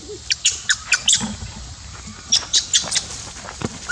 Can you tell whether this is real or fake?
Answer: real